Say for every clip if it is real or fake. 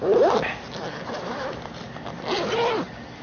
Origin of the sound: real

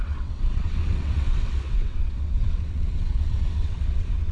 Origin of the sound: fake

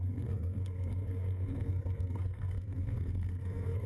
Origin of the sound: fake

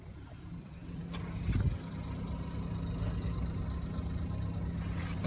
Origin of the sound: real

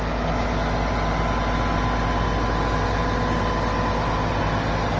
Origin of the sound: real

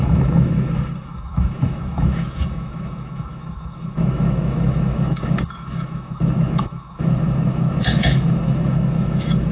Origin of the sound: fake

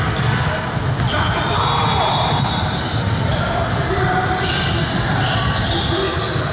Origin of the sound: real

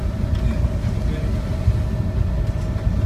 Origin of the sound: real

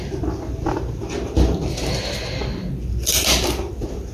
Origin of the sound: real